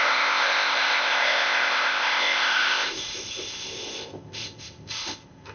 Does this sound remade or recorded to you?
remade